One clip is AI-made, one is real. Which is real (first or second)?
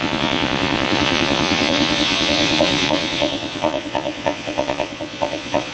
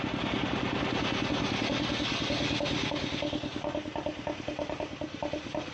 second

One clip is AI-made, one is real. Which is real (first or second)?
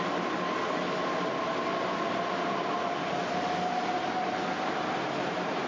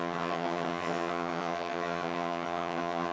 first